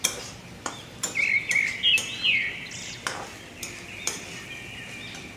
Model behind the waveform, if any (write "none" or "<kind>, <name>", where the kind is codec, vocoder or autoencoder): none